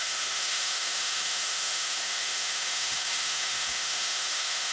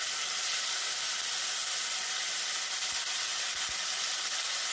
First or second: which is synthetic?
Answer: first